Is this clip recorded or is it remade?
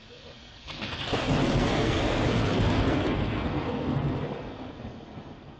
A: remade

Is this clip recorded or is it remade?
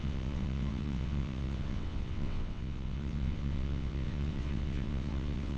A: remade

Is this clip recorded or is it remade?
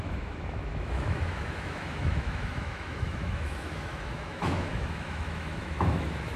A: remade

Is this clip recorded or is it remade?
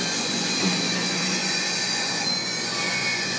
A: remade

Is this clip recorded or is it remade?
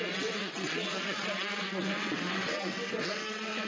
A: remade